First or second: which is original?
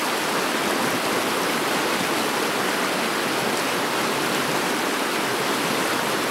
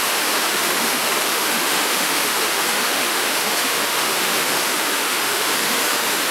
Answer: first